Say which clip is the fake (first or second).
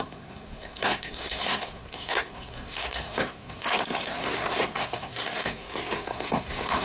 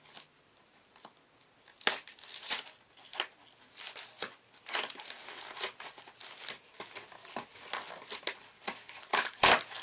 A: first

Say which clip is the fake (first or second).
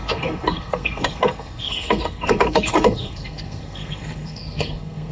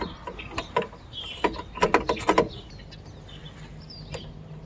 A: first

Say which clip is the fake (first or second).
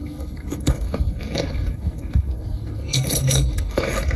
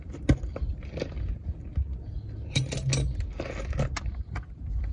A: first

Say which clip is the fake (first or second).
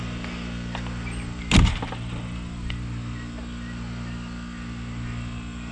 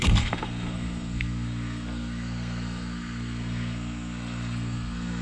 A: second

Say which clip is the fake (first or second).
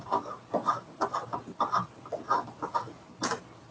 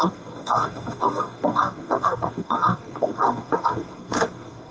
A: second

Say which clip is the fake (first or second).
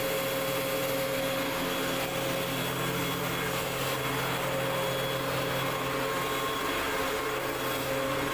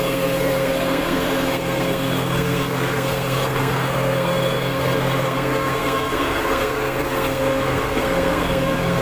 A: second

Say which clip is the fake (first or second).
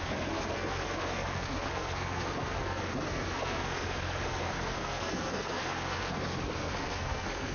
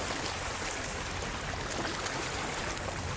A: first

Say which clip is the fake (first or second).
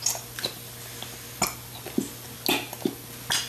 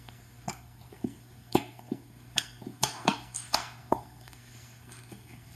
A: second